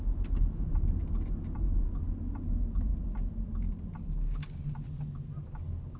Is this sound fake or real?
real